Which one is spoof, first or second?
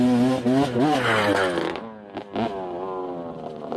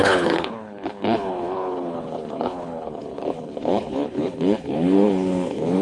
second